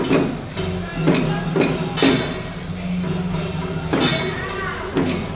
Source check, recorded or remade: recorded